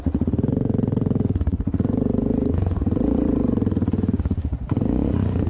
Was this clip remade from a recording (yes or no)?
yes